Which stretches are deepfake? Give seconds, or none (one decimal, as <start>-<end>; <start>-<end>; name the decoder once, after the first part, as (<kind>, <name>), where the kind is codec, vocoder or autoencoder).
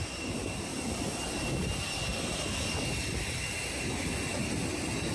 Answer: none